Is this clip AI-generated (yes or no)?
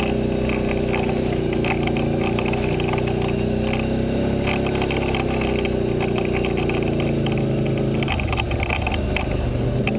no